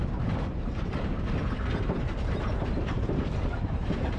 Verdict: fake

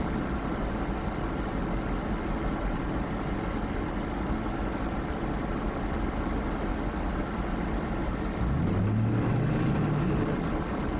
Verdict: real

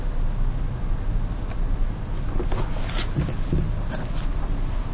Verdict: real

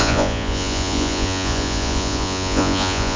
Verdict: fake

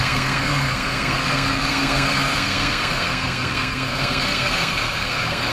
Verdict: fake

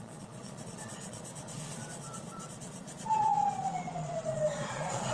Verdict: fake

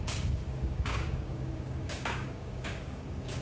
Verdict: fake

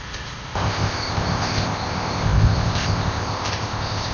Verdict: fake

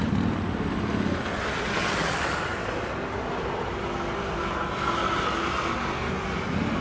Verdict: real